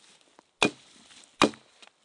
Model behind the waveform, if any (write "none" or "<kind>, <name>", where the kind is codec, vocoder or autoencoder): none